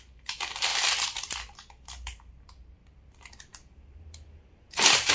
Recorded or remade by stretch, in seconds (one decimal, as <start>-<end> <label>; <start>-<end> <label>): 0.0-0.7 recorded; 0.7-2.4 remade; 2.4-3.5 recorded; 3.5-5.1 remade